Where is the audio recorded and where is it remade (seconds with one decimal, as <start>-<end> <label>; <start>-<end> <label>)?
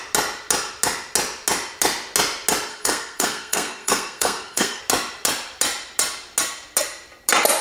0.0-2.7 recorded; 2.7-4.8 remade; 4.8-7.6 recorded